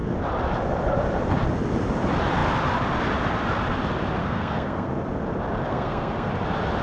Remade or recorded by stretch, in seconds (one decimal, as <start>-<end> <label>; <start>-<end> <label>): 0.0-4.2 recorded; 4.2-4.9 remade; 4.9-5.7 recorded; 5.7-6.3 remade; 6.3-6.8 recorded